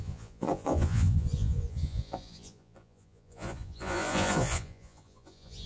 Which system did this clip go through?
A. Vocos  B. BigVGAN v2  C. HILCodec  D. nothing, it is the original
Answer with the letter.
A